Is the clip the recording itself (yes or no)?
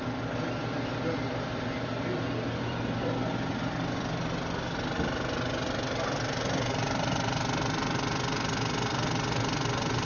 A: yes